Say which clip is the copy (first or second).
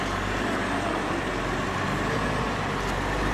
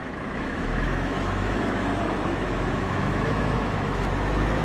second